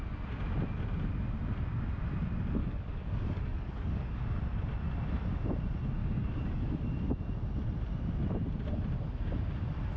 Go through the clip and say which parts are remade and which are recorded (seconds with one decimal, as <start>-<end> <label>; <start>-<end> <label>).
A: 0.0-2.6 recorded; 2.6-4.2 remade; 4.2-6.0 recorded; 6.0-6.8 remade; 6.8-10.0 recorded